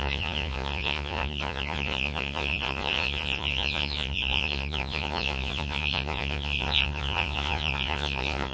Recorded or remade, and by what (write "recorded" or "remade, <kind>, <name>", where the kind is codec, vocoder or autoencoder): remade, vocoder, Vocos